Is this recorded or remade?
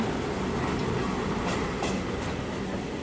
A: recorded